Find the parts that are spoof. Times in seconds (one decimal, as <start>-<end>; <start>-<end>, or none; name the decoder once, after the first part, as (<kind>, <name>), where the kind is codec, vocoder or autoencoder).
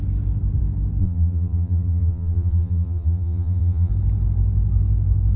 1.0-3.9 (vocoder, BigVGAN v2)